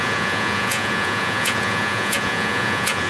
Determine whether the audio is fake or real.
fake